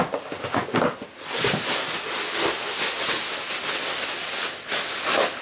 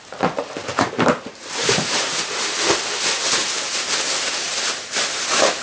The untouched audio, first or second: first